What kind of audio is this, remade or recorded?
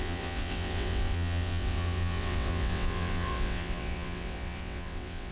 remade